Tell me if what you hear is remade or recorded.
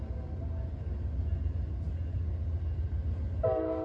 recorded